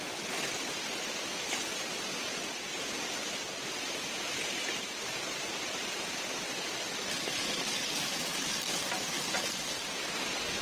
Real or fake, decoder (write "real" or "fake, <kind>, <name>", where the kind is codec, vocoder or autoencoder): real